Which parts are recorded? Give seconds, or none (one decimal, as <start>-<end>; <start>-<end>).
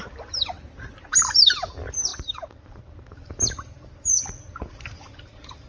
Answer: 0.0-5.7